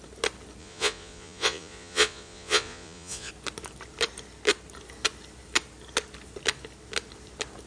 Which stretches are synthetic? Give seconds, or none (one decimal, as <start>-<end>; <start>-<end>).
0.6-3.3